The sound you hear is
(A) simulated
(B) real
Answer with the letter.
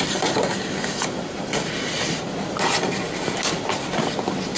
B